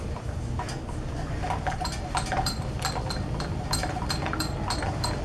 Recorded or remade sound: remade